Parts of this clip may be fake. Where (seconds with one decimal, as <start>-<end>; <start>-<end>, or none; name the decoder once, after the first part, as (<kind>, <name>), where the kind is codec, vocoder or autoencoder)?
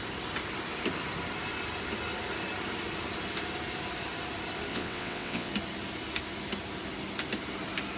4.7-5.5 (vocoder, WaveNeXt)